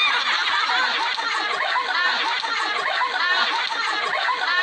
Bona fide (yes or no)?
yes